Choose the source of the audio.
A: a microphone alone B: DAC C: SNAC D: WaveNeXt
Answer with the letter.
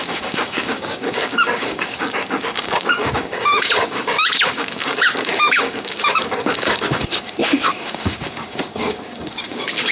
B